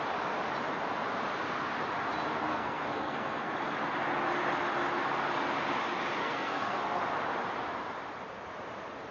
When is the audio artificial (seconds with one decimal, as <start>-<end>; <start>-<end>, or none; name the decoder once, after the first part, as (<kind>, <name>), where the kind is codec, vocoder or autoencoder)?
2.5-3.5 (codec, SNAC); 6.2-7.0